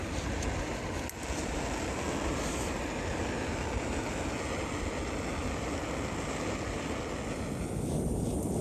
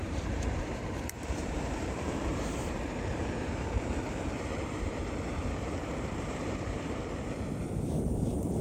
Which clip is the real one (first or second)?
first